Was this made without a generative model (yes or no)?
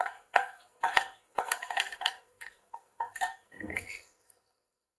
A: no